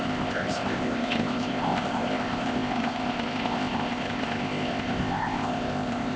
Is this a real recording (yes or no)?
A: no